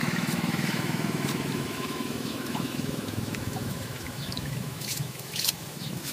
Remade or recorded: remade